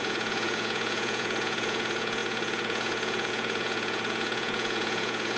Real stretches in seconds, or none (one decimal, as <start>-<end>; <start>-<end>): none